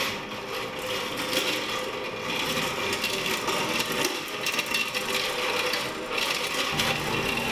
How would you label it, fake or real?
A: real